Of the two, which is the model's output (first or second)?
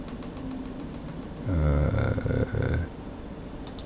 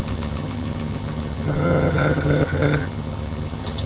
second